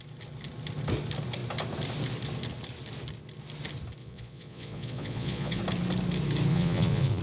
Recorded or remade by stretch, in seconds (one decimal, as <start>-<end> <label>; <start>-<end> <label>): 0.0-4.0 recorded; 4.0-5.6 remade; 5.6-6.5 recorded; 6.5-7.2 remade